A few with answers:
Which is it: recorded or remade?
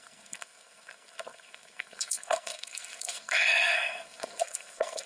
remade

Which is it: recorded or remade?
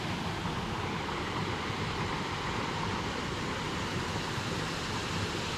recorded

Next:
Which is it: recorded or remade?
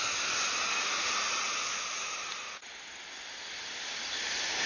recorded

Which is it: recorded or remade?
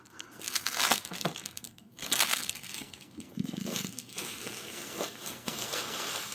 remade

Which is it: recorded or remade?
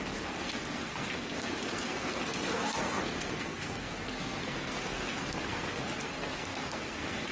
remade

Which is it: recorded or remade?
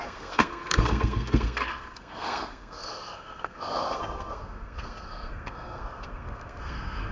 remade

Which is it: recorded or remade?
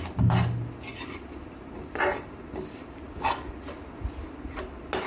recorded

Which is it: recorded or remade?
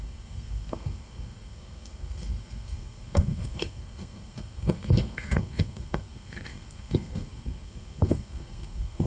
remade